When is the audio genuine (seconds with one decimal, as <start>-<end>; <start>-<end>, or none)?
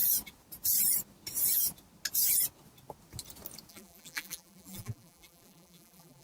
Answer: 0.0-3.7